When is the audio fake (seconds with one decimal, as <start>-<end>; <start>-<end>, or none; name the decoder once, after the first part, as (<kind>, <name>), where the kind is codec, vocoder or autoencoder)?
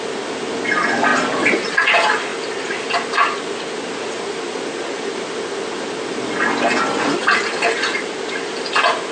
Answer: 1.1-1.8 (vocoder, BigVGAN v2); 8.0-8.6